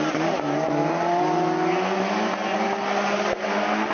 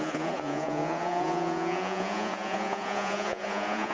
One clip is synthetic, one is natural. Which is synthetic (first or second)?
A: second